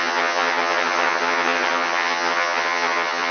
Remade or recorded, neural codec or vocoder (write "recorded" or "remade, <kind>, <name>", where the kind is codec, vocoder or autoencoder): remade, vocoder, HiFi-GAN